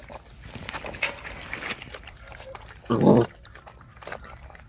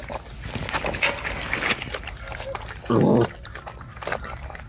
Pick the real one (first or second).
second